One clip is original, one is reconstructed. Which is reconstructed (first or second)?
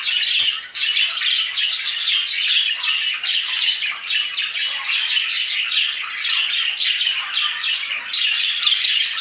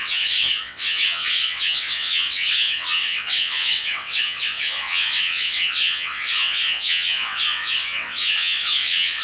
second